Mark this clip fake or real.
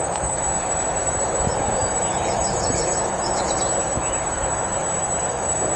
fake